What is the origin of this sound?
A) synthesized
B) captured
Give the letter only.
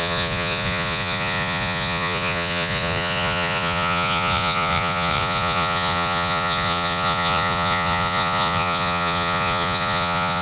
A